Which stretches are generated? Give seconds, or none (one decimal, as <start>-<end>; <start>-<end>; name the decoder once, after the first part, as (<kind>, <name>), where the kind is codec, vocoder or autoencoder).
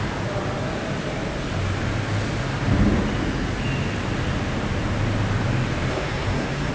5.9-6.7 (codec, SNAC)